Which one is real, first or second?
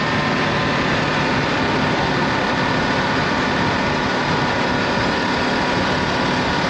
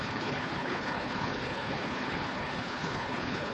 first